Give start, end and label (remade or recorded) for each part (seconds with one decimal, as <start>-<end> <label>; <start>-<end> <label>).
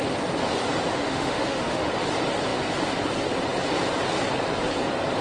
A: 0.0-1.0 recorded; 1.0-1.9 remade; 1.9-5.2 recorded